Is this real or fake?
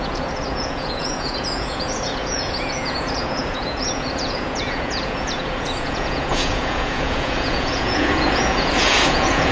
fake